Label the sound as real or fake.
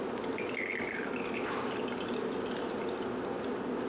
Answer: real